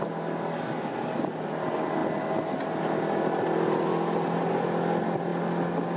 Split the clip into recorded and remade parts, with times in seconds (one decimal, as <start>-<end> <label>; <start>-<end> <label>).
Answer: 0.0-6.0 recorded